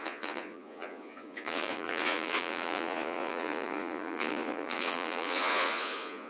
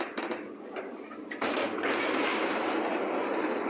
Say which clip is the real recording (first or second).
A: second